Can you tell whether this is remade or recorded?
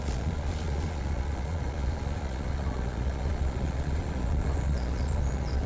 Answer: remade